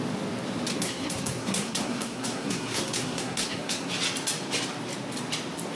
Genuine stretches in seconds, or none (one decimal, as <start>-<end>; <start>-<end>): 0.0-0.7; 3.9-5.8